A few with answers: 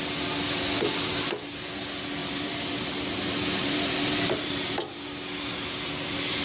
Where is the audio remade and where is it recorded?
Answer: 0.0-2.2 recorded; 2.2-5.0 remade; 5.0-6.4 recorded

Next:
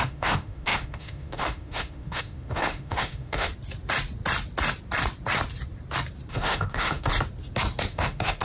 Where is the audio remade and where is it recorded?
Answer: 0.0-3.5 remade; 3.5-6.3 recorded; 6.3-7.1 remade; 7.1-7.9 recorded; 7.9-8.4 remade